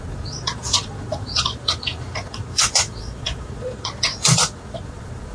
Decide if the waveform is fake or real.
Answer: fake